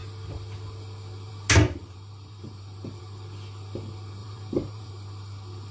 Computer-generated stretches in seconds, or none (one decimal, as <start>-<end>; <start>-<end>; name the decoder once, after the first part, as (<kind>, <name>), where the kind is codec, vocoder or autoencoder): 1.8-3.0 (vocoder, BigVGAN v2); 4.2-4.9